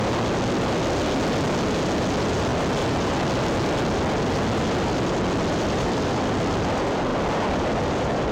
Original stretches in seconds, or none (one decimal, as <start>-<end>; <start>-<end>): 0.0-8.3